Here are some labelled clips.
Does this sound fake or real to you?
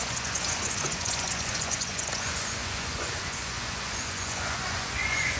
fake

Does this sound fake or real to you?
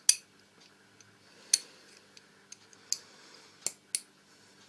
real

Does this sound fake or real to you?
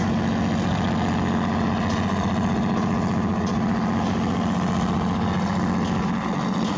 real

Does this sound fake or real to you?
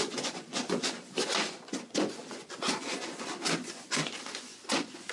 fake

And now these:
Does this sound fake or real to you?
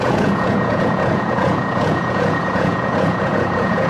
fake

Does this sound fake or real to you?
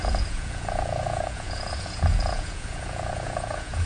fake